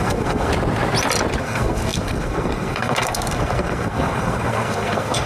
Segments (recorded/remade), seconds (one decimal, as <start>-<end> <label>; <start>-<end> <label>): 0.0-0.5 remade; 0.5-1.4 recorded; 1.4-5.3 remade